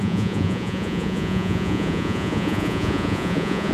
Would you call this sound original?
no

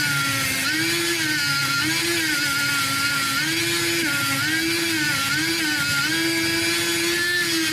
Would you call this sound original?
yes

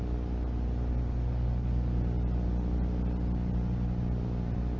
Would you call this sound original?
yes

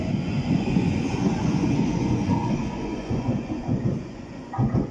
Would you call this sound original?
no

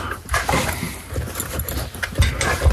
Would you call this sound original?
yes